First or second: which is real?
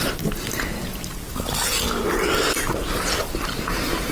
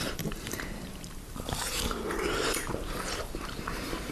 first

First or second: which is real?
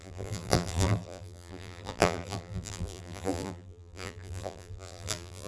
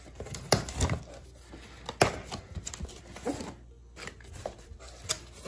second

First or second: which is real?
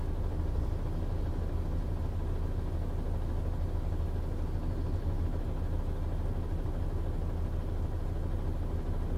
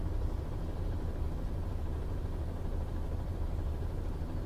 first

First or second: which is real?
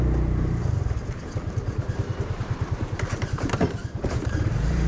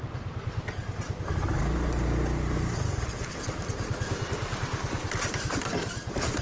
second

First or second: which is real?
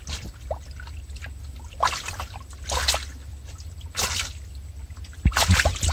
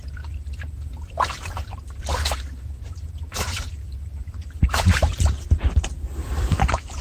first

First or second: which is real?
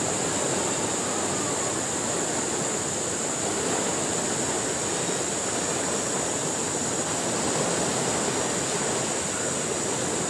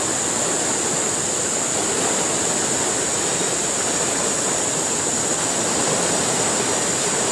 first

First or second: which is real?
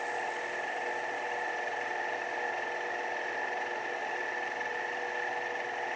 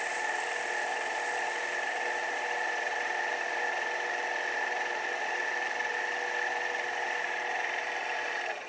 first